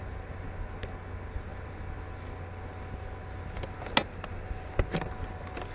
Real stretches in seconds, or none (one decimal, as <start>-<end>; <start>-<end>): 0.0-5.7

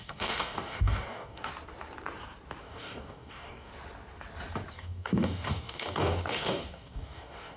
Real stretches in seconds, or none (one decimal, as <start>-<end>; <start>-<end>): 1.5-2.6; 3.7-4.7

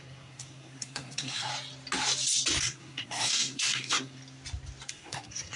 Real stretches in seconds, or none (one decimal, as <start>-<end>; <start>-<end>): 1.5-2.6; 4.2-4.9

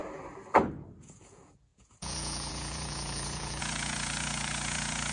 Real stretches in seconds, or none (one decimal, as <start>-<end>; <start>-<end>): 0.0-1.0